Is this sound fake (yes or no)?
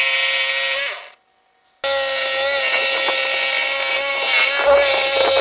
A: no